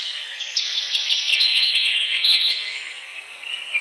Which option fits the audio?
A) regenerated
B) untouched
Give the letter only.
A